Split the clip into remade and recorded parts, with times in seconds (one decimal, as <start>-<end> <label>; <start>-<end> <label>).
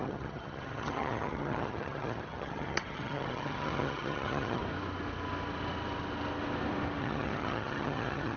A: 0.0-4.6 remade; 4.6-7.0 recorded; 7.0-8.4 remade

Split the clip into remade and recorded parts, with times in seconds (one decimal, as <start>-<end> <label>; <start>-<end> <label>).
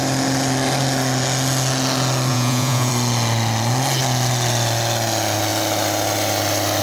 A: 0.0-2.3 recorded; 2.3-2.9 remade; 2.9-6.8 recorded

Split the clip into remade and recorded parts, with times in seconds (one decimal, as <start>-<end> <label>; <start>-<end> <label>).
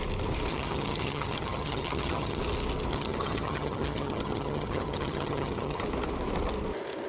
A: 0.0-0.5 recorded; 0.5-2.4 remade; 2.4-2.9 recorded; 2.9-5.8 remade; 5.8-7.1 recorded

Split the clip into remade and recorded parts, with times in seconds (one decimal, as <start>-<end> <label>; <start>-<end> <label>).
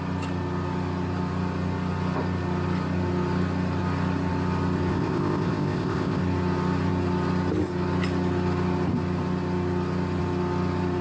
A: 0.0-4.9 recorded; 4.9-6.2 remade; 6.2-11.0 recorded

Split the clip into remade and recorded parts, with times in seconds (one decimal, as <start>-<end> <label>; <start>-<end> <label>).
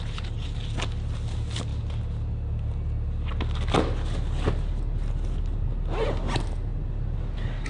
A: 0.0-7.7 recorded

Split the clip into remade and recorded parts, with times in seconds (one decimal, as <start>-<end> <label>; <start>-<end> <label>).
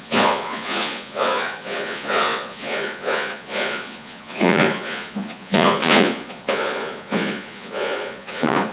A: 0.0-8.7 remade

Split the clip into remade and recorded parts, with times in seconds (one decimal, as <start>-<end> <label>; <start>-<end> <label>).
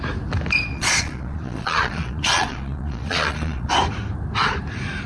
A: 0.0-0.7 recorded; 0.7-3.7 remade; 3.7-5.1 recorded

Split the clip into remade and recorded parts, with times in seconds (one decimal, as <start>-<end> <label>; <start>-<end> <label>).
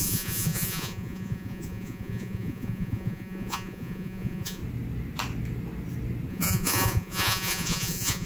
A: 0.0-4.6 remade; 4.6-6.3 recorded; 6.3-8.3 remade